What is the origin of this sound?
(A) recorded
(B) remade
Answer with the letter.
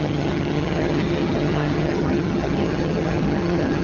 B